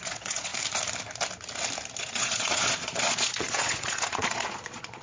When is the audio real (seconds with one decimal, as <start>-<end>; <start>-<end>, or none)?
0.5-2.0

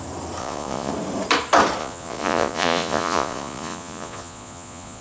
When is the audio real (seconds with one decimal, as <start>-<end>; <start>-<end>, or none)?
0.0-0.4; 0.9-1.8

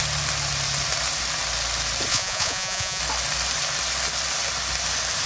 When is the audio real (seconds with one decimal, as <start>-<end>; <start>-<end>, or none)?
0.0-2.1; 3.0-5.3

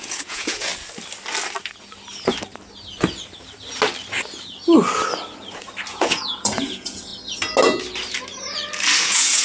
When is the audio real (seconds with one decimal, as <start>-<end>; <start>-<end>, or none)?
0.7-5.9; 7.1-9.0

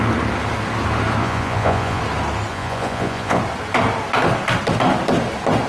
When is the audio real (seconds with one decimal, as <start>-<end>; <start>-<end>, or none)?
0.0-1.2; 2.0-2.5; 3.4-5.7

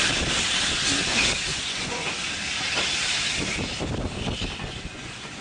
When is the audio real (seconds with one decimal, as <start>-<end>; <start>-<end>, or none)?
0.0-1.5; 2.1-4.6

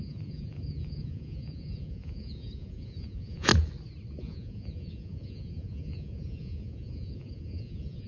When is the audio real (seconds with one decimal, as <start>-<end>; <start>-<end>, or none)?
3.5-4.2

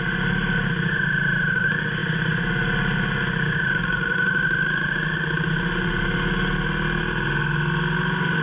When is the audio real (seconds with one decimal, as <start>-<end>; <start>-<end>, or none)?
0.0-8.4